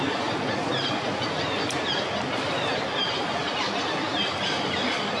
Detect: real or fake real